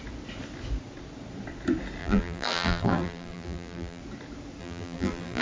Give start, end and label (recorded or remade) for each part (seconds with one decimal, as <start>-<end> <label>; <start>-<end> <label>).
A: 0.0-2.0 recorded; 2.0-4.0 remade; 4.0-4.6 recorded; 4.6-5.4 remade